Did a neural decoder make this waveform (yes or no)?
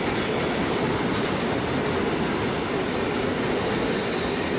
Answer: no